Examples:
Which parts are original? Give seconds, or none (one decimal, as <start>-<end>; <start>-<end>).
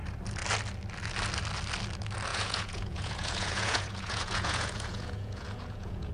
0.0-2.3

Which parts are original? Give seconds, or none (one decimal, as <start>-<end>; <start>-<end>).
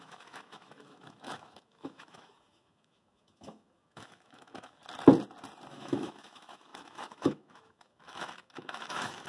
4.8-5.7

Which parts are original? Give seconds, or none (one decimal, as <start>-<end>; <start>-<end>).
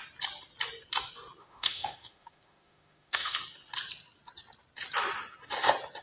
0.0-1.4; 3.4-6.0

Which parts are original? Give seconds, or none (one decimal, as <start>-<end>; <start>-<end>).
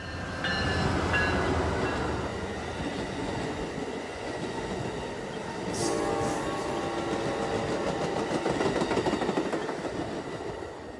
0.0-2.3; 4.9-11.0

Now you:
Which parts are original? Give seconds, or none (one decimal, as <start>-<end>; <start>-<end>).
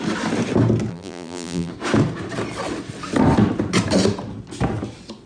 0.0-0.9; 1.7-5.3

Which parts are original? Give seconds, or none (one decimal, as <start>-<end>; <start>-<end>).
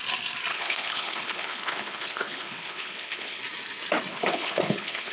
0.0-0.5; 3.4-4.1